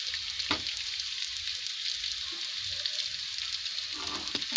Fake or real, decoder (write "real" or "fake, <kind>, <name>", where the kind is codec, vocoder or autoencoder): real